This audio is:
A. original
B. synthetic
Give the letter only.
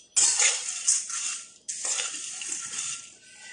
A